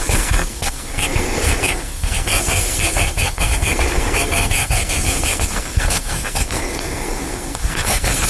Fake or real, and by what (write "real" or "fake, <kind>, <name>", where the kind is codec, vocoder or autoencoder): fake, codec, SNAC